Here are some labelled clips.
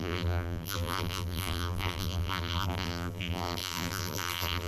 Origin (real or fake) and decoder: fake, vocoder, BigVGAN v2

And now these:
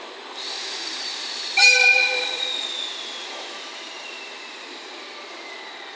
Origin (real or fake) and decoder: fake, vocoder, BigVGAN v2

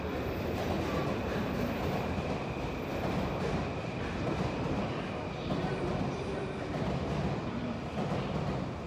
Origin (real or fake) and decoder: fake, vocoder, BigVGAN v2